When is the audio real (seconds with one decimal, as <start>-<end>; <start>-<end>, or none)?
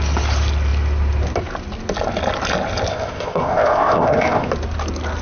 0.0-2.9; 4.5-5.2